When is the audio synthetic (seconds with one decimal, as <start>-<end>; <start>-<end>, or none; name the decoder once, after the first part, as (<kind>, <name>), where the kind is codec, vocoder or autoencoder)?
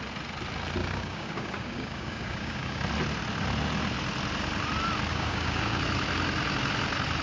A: 0.8-2.8 (codec, DAC); 5.1-5.8